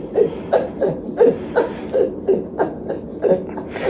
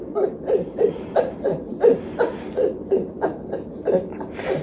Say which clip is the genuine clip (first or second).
first